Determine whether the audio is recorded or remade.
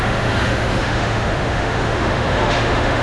remade